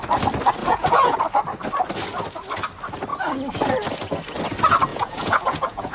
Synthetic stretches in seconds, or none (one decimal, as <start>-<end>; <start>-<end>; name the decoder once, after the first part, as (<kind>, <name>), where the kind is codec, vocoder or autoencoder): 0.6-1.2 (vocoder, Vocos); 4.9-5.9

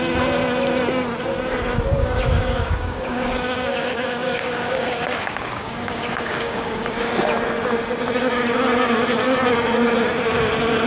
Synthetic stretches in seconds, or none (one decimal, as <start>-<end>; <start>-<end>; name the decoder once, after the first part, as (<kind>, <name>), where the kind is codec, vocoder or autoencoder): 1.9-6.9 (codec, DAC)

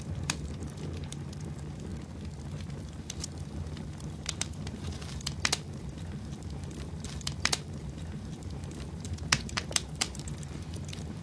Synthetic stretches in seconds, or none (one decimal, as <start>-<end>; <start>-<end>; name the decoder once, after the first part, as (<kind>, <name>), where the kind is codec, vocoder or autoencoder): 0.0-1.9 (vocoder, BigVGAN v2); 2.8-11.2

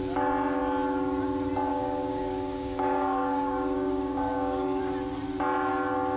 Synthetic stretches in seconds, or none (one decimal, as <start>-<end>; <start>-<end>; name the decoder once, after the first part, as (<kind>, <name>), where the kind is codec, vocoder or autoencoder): 1.7-4.8 (codec, DAC)

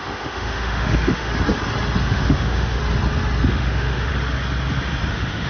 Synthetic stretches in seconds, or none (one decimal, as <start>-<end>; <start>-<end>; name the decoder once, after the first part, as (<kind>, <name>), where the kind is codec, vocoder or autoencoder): 0.0-1.3 (autoencoder, DAC-VAE); 2.0-2.8; 3.5-4.1; 5.1-5.5

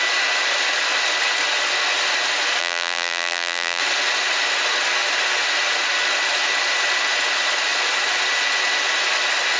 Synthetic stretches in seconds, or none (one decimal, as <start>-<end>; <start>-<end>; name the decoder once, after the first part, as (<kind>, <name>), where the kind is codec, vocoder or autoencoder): 2.6-3.8 (vocoder, BigVGAN v2)

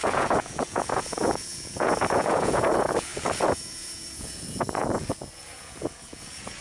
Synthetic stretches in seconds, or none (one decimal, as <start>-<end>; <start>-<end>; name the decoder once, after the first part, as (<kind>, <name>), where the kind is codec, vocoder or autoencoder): 0.0-6.6 (vocoder, Vocos)

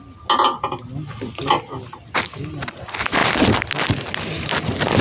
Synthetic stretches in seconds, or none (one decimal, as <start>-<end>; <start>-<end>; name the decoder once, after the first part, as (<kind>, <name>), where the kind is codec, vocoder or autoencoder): none